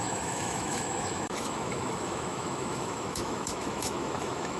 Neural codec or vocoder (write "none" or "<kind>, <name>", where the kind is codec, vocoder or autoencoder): autoencoder, DAC-VAE